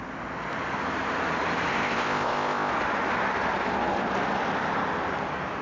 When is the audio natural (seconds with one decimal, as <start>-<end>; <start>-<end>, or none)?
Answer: 0.0-1.7; 2.7-5.6